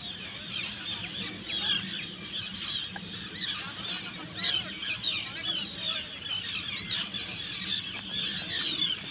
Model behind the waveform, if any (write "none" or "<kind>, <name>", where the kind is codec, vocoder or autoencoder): none